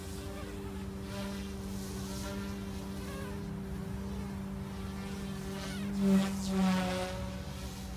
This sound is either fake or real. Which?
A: real